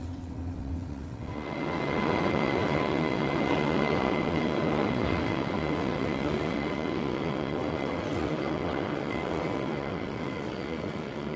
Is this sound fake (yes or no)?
yes